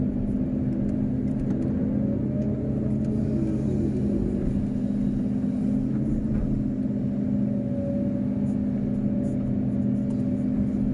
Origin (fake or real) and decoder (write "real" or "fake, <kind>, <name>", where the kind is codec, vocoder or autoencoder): real